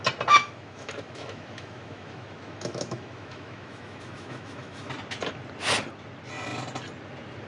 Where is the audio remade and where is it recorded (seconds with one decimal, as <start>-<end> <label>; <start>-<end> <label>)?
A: 0.0-0.4 recorded; 0.4-4.9 remade; 4.9-7.5 recorded